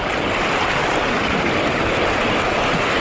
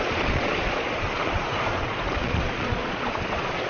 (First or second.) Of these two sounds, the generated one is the second